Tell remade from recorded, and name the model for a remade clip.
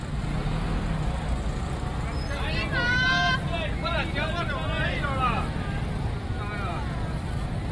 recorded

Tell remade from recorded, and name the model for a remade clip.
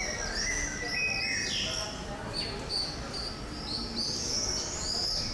recorded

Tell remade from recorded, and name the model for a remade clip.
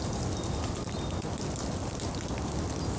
recorded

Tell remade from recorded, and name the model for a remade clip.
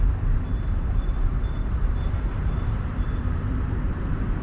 remade, vocoder, BigVGAN v2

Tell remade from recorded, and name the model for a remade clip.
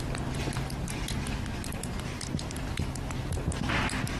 recorded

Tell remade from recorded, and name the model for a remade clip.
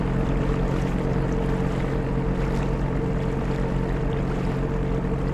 recorded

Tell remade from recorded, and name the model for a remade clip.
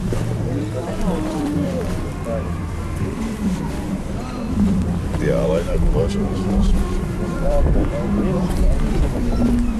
remade, vocoder, BigVGAN v2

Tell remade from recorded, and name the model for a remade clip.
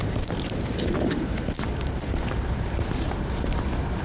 remade, vocoder, BigVGAN v2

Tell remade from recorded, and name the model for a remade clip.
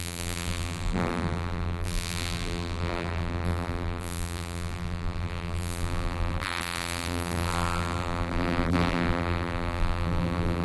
remade, vocoder, BigVGAN v2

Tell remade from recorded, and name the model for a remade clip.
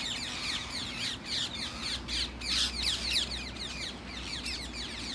recorded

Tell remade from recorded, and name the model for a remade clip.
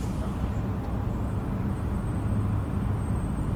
recorded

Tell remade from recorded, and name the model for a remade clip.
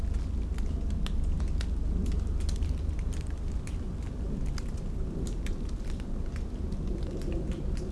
recorded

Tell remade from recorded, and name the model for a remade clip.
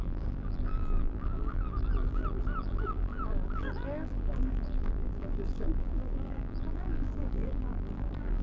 remade, vocoder, BigVGAN v2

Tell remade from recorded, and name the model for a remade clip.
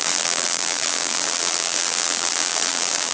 remade, vocoder, BigVGAN v2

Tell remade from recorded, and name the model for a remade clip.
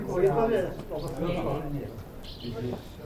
recorded